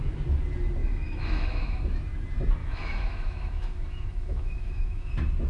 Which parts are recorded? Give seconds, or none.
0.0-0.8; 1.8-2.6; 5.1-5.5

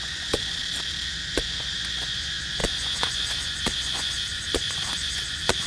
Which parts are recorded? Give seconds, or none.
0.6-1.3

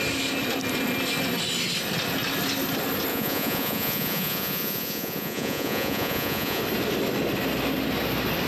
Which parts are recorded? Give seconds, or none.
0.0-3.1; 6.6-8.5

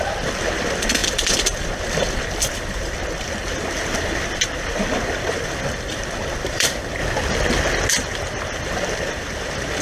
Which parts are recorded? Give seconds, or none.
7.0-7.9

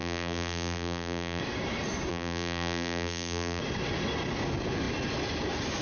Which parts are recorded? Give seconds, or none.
1.4-2.1; 3.6-5.8